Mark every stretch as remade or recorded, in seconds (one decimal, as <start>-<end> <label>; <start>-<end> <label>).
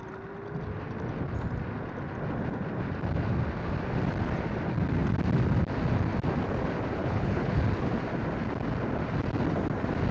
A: 0.0-7.0 recorded; 7.0-7.6 remade; 7.6-10.1 recorded